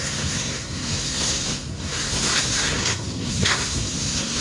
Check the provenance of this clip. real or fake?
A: fake